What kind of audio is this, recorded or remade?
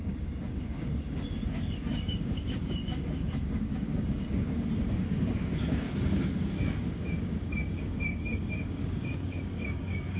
remade